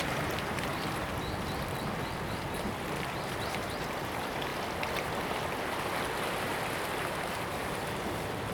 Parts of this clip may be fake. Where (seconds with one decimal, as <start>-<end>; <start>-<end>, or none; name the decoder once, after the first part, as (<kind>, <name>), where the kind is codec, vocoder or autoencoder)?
0.0-0.7 (vocoder, BigVGAN v2); 2.8-4.5; 7.0-8.5